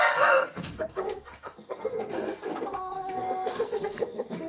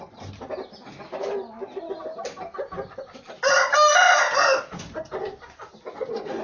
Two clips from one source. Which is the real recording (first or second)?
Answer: second